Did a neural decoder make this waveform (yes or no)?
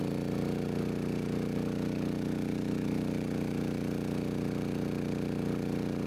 yes